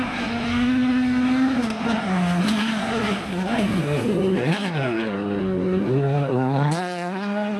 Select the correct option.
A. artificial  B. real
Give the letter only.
A